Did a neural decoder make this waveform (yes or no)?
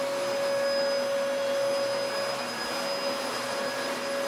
no